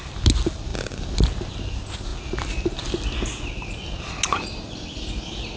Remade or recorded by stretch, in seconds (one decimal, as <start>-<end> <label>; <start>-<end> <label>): 0.0-5.6 recorded